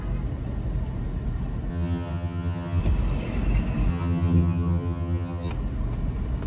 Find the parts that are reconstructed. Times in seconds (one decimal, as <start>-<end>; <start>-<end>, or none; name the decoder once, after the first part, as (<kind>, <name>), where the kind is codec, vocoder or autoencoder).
1.7-2.8 (vocoder, HiFi-GAN); 3.9-5.5